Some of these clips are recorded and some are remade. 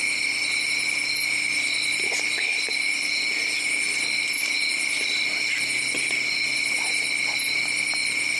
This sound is recorded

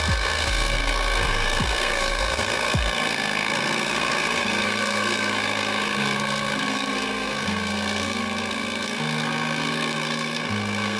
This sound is remade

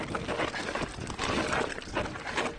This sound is recorded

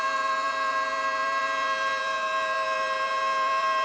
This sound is remade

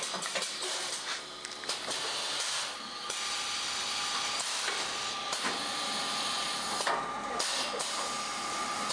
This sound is recorded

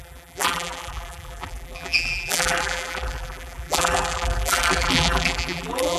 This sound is remade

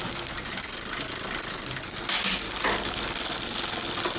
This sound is recorded